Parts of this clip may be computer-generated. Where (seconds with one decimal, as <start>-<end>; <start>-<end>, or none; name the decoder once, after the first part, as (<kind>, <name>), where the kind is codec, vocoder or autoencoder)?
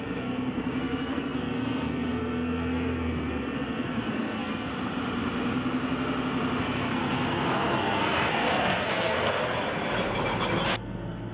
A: 0.0-4.7 (codec, SNAC); 6.6-9.4; 10.7-11.3